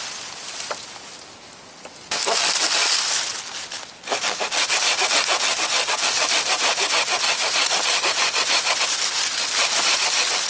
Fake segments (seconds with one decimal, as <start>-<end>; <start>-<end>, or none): none